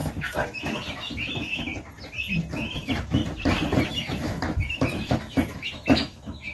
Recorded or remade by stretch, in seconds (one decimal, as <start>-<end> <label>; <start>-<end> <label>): 0.0-1.7 remade; 1.7-2.5 recorded; 2.5-3.2 remade; 3.2-3.9 recorded; 3.9-6.5 remade